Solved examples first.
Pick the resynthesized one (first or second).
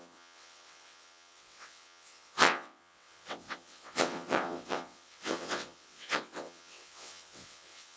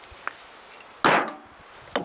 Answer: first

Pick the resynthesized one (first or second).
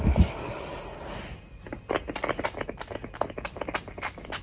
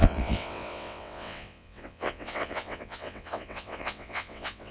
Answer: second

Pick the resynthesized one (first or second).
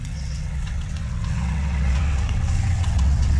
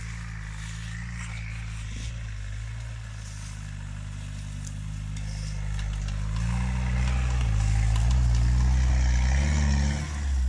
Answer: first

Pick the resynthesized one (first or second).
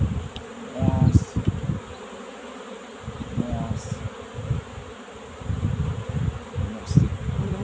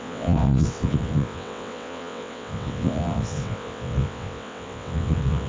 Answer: second